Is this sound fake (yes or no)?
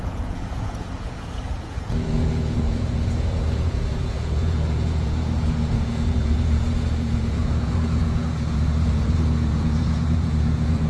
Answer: yes